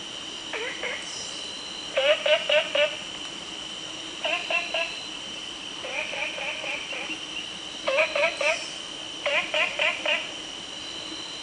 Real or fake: fake